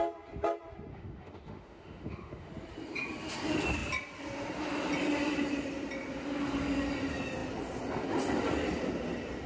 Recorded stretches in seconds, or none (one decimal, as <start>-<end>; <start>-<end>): 0.0-0.9; 2.5-9.5